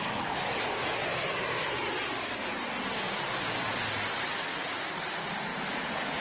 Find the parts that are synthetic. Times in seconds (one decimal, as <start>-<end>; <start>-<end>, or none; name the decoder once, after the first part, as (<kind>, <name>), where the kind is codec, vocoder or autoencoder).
5.5-6.2 (vocoder, Vocos)